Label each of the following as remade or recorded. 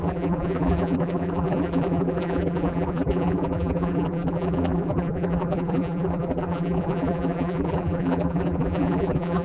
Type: remade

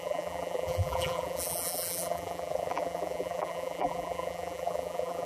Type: remade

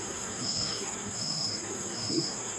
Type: remade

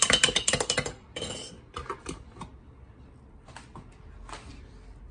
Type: recorded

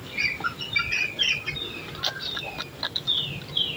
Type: recorded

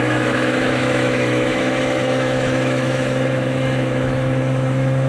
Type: remade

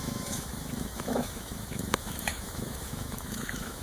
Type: remade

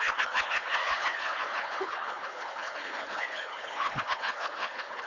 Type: remade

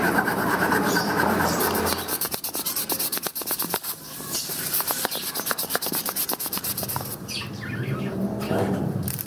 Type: remade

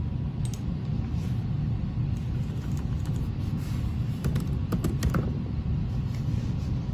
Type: recorded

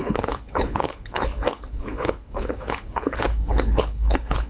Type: remade